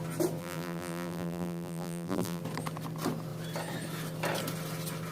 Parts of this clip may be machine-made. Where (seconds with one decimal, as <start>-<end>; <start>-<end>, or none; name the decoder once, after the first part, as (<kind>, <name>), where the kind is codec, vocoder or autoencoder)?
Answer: 0.4-2.4 (vocoder, BigVGAN v2)